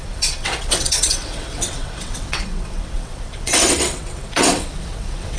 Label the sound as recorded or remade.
remade